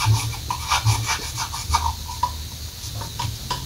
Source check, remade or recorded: recorded